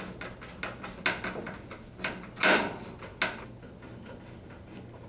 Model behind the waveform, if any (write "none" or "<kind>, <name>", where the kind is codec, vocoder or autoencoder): none